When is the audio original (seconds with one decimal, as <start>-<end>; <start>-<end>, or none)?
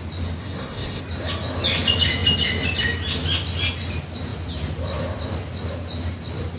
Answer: 0.0-0.4; 1.0-6.6